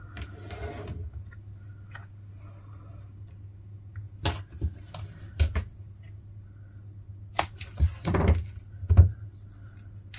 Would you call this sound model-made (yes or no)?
no